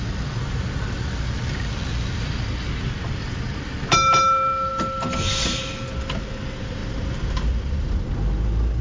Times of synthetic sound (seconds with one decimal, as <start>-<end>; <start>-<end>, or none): none